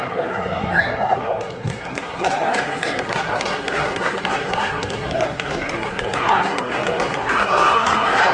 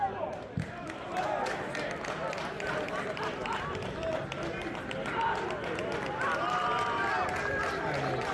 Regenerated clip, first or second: first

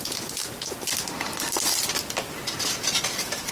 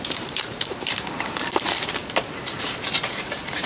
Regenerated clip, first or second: second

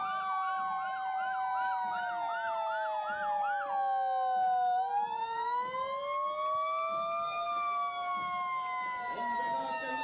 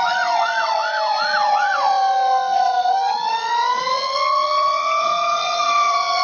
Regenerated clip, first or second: second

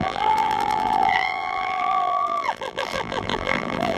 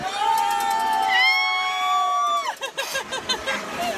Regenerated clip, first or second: first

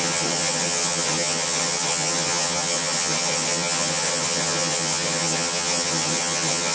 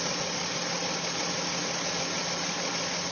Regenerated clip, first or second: first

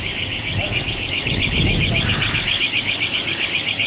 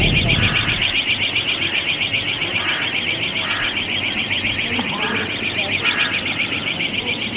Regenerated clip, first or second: first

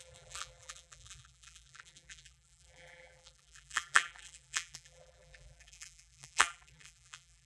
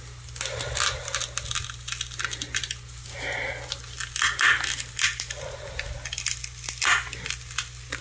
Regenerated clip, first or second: first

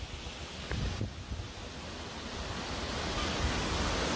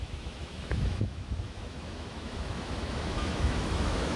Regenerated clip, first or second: second